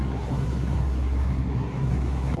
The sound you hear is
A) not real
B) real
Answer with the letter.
A